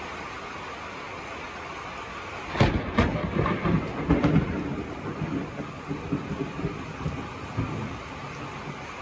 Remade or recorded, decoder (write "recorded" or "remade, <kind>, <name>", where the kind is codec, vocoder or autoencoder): recorded